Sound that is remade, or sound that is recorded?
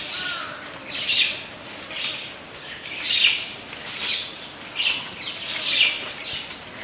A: recorded